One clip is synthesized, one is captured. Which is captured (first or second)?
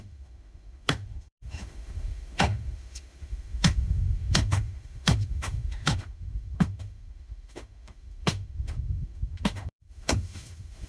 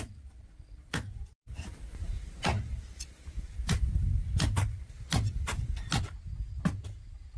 second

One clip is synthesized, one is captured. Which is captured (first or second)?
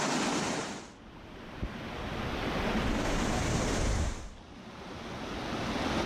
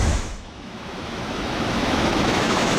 first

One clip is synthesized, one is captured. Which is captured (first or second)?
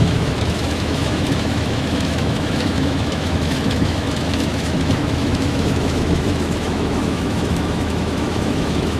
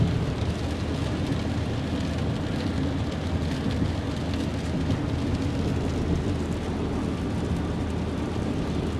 second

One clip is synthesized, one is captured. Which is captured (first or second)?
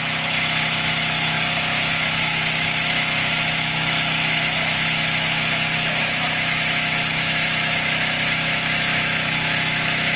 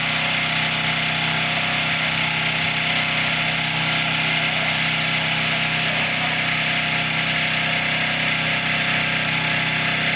second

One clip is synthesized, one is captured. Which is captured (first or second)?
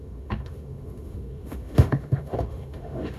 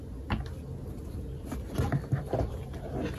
second